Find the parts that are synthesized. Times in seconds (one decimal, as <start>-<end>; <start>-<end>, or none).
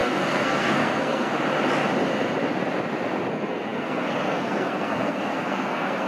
0.0-1.3; 3.3-6.1